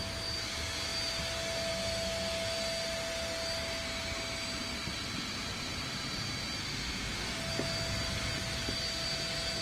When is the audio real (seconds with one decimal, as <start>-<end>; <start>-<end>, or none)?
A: 0.0-6.6; 7.4-9.6